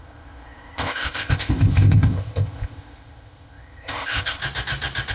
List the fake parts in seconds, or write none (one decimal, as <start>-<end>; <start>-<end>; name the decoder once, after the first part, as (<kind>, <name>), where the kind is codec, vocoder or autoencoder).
0.0-4.4 (codec, ZipCodec)